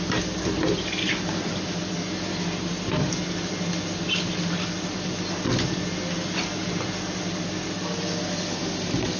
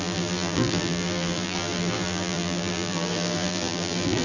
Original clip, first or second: first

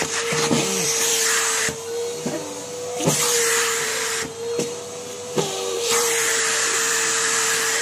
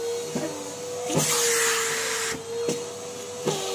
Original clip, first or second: second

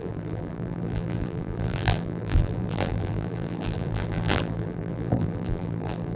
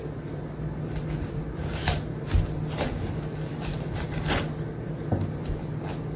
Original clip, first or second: second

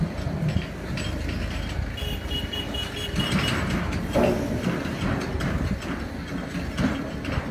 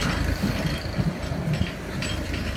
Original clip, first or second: first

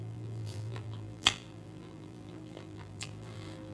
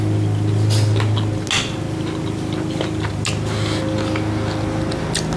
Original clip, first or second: second